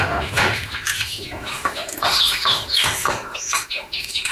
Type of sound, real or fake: fake